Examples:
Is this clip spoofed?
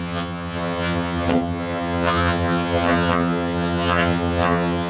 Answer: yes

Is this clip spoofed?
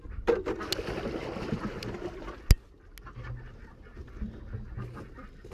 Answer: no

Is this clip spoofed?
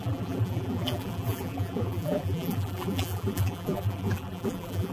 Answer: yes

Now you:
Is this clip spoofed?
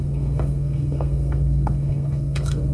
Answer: yes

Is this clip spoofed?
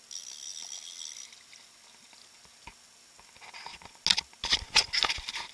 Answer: no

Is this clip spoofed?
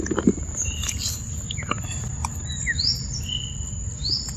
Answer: yes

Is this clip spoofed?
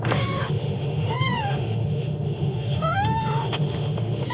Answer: yes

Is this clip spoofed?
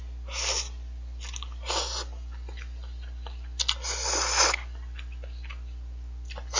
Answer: no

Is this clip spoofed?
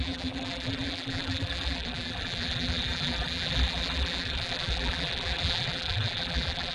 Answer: yes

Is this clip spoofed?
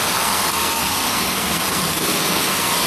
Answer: yes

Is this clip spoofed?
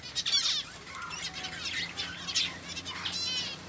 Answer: no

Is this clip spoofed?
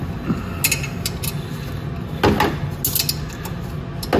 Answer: no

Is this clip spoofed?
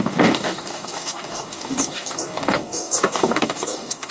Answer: yes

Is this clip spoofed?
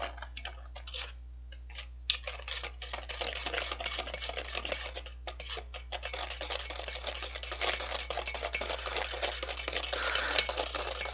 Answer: no